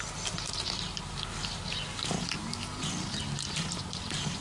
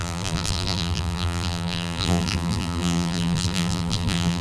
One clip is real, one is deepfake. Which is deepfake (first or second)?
second